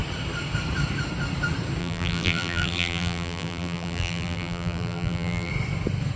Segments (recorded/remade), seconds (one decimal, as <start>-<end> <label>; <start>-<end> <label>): 0.0-1.8 recorded; 1.8-5.5 remade; 5.5-6.2 recorded